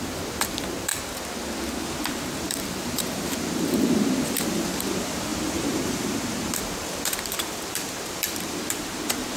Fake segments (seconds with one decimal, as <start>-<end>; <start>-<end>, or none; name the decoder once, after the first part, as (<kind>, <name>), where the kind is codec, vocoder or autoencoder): 0.0-0.9 (vocoder, BigVGAN v2); 2.1-9.4